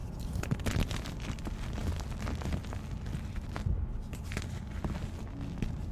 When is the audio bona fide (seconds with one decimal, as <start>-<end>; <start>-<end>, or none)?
0.0-5.9

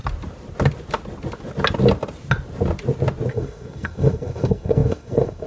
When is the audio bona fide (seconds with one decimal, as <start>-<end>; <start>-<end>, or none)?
0.0-3.3

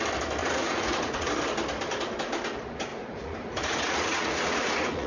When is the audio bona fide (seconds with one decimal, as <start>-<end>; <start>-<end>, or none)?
0.0-0.4; 1.3-2.9

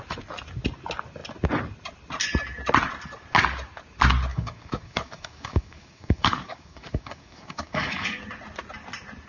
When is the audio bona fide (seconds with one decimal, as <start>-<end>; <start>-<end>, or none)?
0.0-4.3; 8.2-9.3

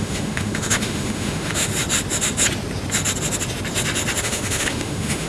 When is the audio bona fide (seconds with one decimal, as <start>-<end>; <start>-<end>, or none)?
1.7-4.2

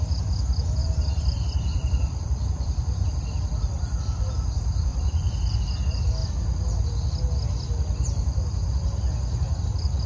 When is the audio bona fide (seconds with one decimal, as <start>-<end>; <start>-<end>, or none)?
0.0-0.8; 4.0-4.9; 5.5-10.1

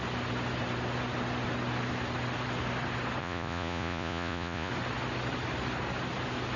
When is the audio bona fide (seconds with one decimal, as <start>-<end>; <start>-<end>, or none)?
0.0-3.2; 4.7-6.6

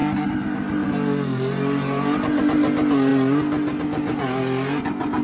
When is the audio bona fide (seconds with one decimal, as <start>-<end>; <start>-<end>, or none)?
0.0-5.2